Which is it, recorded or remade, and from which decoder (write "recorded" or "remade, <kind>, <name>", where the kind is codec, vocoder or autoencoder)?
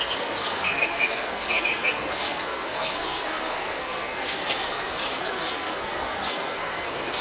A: remade, codec, SNAC